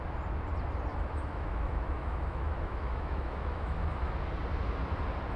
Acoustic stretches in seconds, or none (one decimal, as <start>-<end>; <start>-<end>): 0.0-0.9; 4.1-5.4